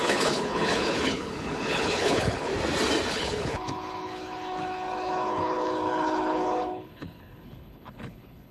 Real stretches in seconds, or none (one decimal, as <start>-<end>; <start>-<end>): 2.5-3.1